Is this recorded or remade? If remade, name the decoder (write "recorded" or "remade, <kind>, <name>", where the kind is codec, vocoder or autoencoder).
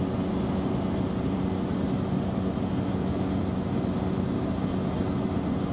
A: recorded